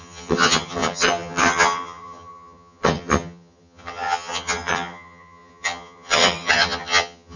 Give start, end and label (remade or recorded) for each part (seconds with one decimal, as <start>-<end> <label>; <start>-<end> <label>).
0.0-7.4 remade